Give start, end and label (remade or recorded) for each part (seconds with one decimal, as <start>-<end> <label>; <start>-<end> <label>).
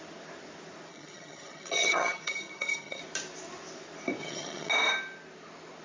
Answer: 0.0-0.9 recorded; 0.9-3.0 remade; 3.0-4.2 recorded; 4.2-4.7 remade; 4.7-5.8 recorded